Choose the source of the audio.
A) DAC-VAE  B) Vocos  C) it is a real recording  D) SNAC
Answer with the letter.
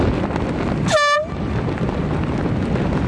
C